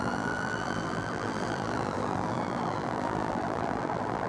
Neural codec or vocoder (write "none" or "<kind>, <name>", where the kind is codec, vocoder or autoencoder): vocoder, BigVGAN v2